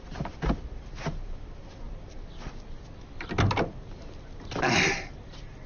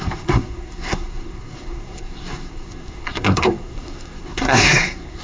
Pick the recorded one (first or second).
first